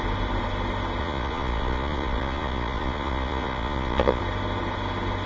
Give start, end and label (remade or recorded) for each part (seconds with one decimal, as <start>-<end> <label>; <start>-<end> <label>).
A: 0.0-1.0 recorded; 1.0-4.2 remade; 4.2-5.3 recorded